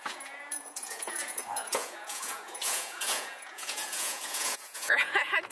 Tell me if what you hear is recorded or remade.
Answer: remade